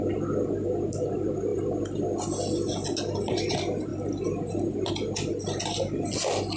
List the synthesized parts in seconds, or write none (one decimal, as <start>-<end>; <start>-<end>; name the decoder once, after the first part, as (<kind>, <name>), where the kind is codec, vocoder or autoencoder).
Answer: none